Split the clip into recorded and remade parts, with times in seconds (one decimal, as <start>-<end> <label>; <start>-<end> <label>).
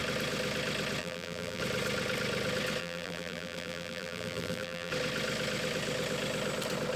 0.0-1.0 recorded; 1.0-1.6 remade; 1.6-2.8 recorded; 2.8-4.9 remade; 4.9-7.0 recorded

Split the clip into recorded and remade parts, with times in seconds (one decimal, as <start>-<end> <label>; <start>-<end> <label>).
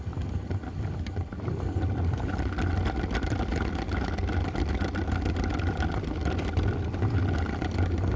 0.0-8.2 recorded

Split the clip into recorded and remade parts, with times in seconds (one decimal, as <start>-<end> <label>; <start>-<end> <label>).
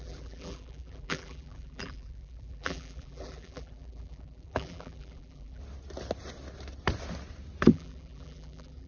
0.0-5.6 remade; 5.6-7.7 recorded; 7.7-8.9 remade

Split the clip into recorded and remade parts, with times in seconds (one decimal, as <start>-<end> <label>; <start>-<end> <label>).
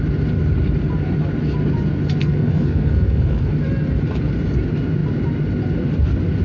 0.0-2.2 recorded; 2.2-3.5 remade; 3.5-6.4 recorded